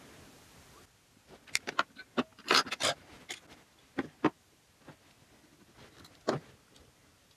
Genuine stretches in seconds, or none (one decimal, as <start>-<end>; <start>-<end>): 0.0-7.4